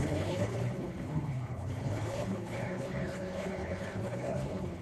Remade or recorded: remade